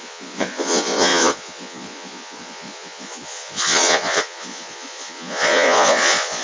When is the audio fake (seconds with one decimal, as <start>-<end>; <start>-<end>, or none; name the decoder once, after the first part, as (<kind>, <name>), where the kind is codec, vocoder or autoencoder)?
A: 0.0-6.4 (vocoder, Vocos)